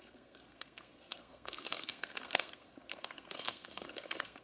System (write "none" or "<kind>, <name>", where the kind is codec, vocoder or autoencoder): codec, SNAC